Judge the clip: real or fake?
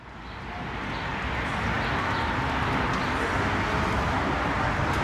real